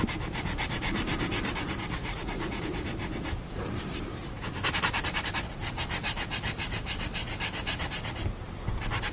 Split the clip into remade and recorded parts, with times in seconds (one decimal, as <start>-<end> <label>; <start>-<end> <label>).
0.0-2.0 recorded; 2.0-2.6 remade; 2.6-9.1 recorded